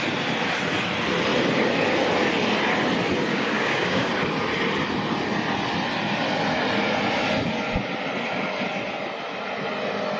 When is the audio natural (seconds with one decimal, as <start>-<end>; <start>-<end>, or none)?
0.0-3.3; 4.1-10.2